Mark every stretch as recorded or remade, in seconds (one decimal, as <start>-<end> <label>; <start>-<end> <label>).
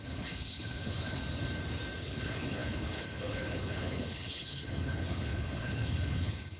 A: 0.0-1.2 remade; 1.2-2.0 recorded; 2.0-6.6 remade